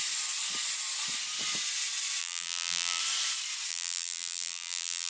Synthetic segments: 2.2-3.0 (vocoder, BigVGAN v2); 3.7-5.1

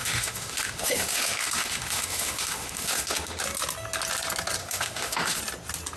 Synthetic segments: 0.0-3.4 (autoencoder, DAC-VAE); 4.6-5.4